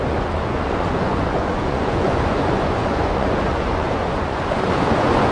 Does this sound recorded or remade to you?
remade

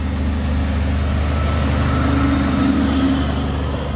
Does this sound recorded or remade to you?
recorded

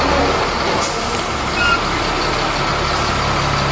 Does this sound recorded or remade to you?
recorded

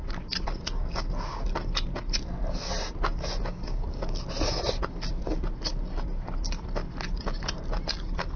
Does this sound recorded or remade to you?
recorded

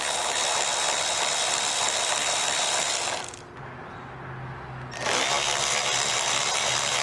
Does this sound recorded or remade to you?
recorded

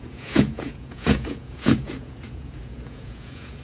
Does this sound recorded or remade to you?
remade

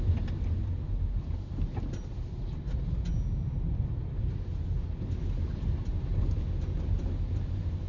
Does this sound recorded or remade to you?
recorded